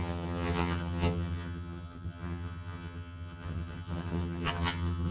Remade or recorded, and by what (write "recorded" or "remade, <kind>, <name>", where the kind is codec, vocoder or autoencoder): remade, vocoder, HiFi-GAN